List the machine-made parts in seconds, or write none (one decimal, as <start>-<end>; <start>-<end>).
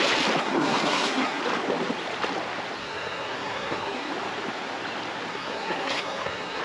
0.4-1.4; 2.8-4.1; 5.3-6.6